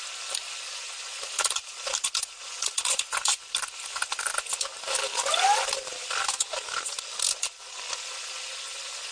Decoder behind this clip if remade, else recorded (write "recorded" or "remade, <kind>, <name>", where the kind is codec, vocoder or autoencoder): recorded